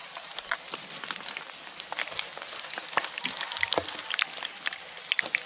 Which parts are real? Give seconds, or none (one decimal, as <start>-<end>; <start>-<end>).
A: 3.3-5.5